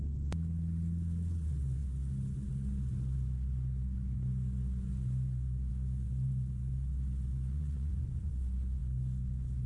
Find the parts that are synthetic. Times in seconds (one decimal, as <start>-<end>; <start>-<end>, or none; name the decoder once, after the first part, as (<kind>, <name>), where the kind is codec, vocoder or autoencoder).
7.5-8.3 (vocoder, Vocos)